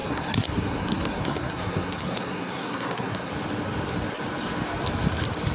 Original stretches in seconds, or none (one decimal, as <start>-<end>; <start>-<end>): 3.3-5.5